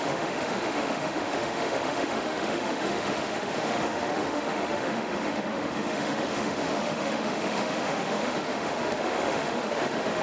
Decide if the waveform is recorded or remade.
remade